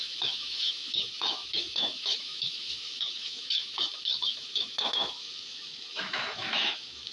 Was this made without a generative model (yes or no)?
no